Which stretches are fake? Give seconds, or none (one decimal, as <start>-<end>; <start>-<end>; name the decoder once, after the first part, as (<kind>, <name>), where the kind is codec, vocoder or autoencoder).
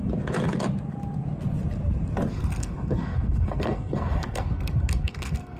2.3-5.6 (codec, SNAC)